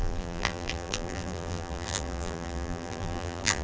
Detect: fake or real fake